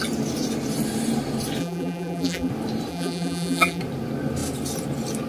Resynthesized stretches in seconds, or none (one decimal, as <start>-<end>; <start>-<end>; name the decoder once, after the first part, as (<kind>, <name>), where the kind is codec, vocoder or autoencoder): 1.6-2.5 (vocoder, BigVGAN v2); 2.9-3.8